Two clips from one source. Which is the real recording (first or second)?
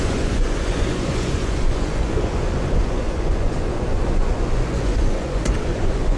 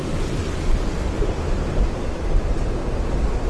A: second